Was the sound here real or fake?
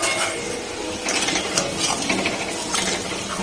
real